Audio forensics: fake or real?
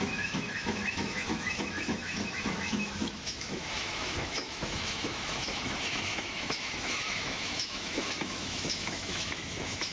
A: fake